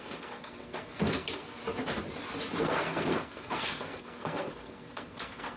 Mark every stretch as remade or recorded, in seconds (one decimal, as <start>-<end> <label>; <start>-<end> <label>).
0.0-1.6 remade; 1.6-2.6 recorded; 2.6-5.6 remade